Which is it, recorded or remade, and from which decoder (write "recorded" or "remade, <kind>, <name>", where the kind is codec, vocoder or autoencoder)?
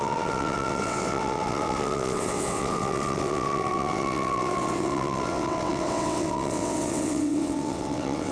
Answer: remade, vocoder, WaveNeXt